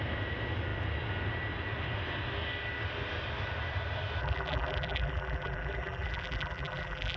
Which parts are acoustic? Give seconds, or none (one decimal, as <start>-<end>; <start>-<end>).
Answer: 0.0-4.2